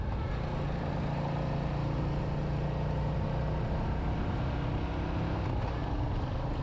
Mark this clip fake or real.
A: real